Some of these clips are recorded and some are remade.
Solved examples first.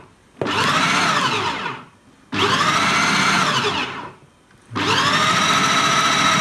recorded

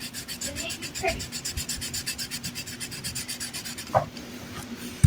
remade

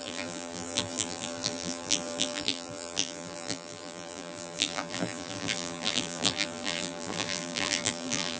remade